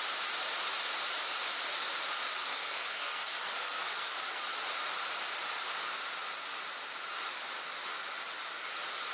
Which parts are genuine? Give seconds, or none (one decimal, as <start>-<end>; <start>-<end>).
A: 0.0-2.4; 4.4-9.1